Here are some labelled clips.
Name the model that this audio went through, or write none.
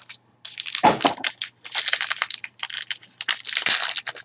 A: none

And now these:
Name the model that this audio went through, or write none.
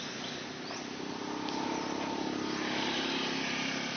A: none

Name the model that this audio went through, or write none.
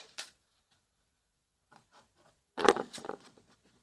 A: vocoder, Vocos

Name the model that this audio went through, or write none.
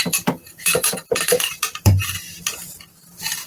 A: vocoder, BigVGAN v2